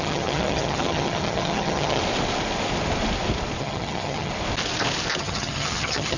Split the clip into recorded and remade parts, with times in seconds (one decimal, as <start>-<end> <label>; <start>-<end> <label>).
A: 0.0-2.0 remade; 2.0-3.6 recorded; 3.6-4.3 remade; 4.3-5.2 recorded; 5.2-6.2 remade